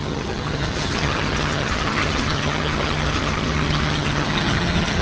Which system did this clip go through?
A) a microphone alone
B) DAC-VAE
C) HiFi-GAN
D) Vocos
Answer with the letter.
C